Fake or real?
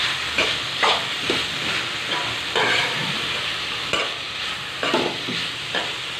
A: real